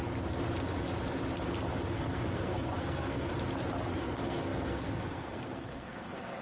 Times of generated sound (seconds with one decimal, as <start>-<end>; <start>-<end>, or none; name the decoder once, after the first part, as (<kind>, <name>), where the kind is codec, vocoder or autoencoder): 1.9-3.3 (codec, SNAC); 4.0-6.4